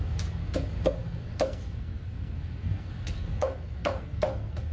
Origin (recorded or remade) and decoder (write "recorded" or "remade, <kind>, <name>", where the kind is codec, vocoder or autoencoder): remade, codec, SNAC